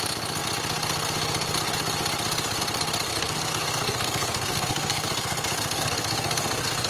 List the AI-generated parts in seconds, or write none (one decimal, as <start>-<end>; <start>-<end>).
3.1-6.9